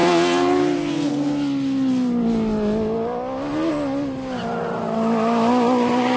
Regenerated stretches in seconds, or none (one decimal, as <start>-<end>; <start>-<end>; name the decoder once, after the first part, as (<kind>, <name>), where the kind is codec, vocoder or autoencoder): none